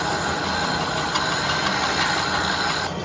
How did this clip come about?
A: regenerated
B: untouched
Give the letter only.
B